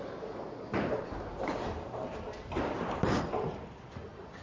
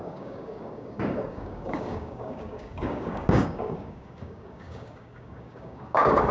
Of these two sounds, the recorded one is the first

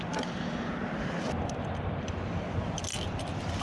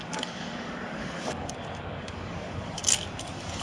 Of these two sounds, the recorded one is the first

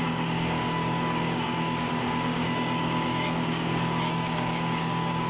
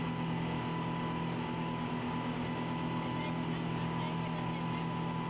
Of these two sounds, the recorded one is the second